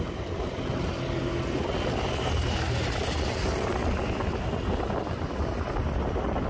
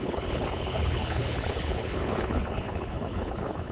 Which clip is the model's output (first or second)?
second